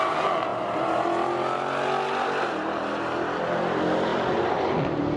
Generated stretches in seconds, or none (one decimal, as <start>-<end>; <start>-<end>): none